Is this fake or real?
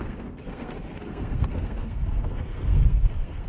fake